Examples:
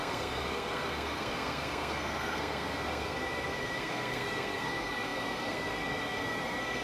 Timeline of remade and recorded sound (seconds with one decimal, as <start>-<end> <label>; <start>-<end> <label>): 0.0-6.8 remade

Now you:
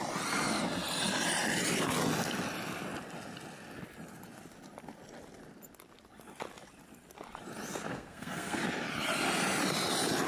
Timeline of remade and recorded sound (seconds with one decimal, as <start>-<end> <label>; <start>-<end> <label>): 0.0-7.9 recorded; 7.9-8.6 remade; 8.6-10.3 recorded

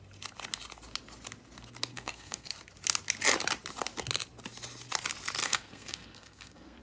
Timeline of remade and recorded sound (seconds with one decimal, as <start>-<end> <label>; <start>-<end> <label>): 0.0-1.9 recorded; 1.9-2.5 remade; 2.5-5.4 recorded; 5.4-6.8 remade

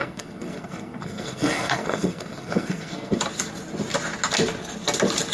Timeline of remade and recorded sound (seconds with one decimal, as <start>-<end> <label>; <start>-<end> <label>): 0.0-3.2 remade; 3.2-5.3 recorded

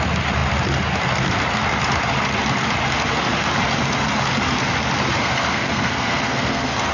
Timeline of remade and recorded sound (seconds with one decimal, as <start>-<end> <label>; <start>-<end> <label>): 0.0-5.2 recorded; 5.2-6.9 remade